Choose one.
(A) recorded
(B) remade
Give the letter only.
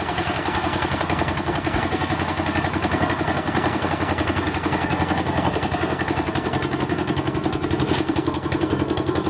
B